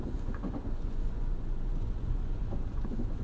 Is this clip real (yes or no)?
no